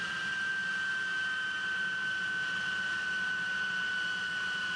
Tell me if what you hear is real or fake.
real